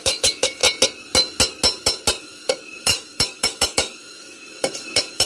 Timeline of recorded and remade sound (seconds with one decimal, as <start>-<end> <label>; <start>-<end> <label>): 0.0-0.6 remade; 0.6-2.2 recorded; 2.2-5.3 remade